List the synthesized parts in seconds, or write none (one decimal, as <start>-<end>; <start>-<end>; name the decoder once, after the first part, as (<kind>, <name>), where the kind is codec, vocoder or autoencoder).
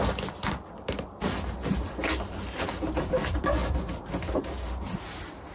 3.6-4.4 (vocoder, BigVGAN v2)